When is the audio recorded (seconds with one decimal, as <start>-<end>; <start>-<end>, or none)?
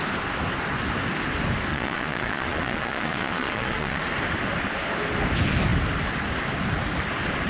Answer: 0.0-1.7; 4.0-7.5